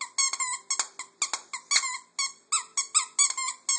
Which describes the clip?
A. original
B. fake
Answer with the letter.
A